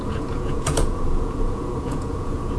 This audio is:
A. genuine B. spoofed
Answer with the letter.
B